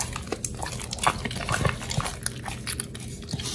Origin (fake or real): real